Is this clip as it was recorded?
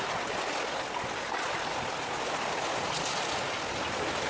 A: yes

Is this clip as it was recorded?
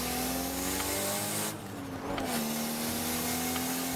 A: yes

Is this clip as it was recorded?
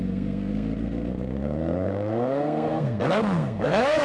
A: no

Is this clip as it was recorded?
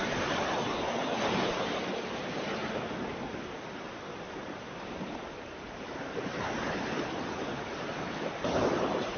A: yes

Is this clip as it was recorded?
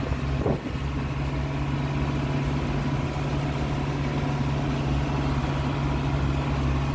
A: yes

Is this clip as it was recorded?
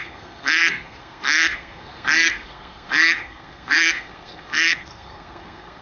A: no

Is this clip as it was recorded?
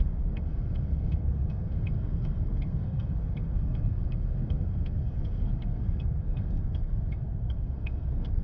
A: no